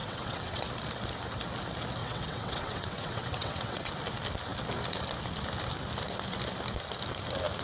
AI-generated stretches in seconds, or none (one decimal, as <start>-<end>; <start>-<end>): 0.0-0.6; 2.0-3.9